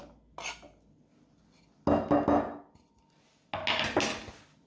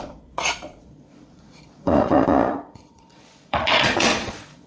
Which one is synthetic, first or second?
second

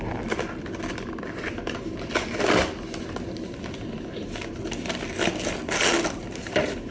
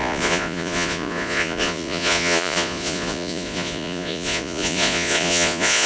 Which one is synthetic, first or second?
second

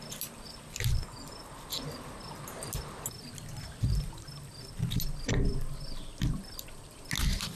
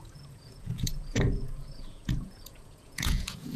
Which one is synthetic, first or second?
second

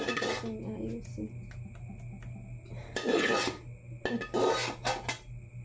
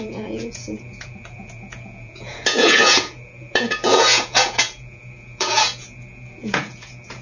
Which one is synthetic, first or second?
second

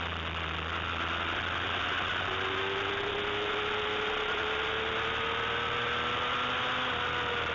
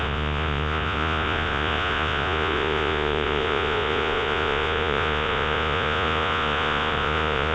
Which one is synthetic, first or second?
second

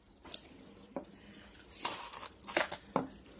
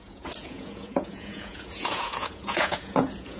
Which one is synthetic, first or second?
second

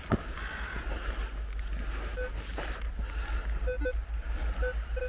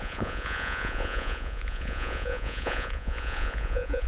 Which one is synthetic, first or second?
second